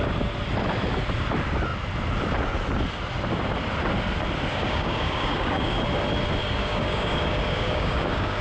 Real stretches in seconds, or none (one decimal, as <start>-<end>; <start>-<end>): 0.0-4.5; 5.8-6.4